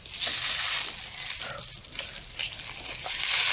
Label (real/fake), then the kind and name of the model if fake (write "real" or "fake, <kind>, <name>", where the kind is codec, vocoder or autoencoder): real